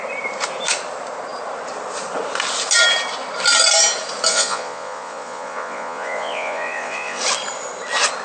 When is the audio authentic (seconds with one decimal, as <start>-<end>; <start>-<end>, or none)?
0.0-4.3; 7.2-8.2